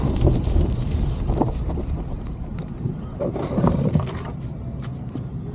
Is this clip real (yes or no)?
no